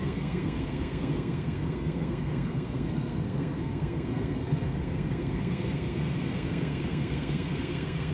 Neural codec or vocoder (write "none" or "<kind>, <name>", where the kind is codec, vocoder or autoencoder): codec, SNAC